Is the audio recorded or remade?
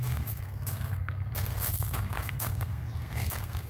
remade